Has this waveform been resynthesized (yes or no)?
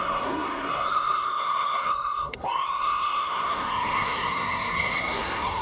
yes